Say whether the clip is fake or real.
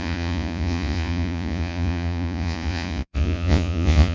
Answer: fake